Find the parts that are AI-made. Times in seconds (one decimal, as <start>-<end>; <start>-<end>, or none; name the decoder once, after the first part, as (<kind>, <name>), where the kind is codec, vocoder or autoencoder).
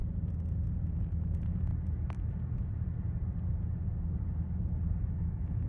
1.1-1.7 (autoencoder, DAC-VAE); 5.1-5.7